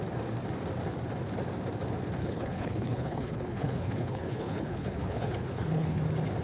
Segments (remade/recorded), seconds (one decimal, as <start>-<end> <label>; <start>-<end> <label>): 0.0-2.2 recorded; 2.2-6.0 remade; 6.0-6.4 recorded